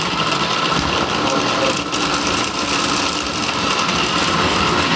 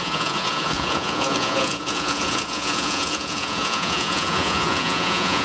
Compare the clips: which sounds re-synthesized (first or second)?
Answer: second